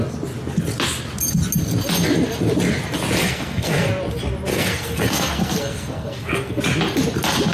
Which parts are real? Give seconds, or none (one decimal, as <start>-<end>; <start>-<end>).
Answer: 0.0-3.2; 3.9-4.5; 6.6-7.5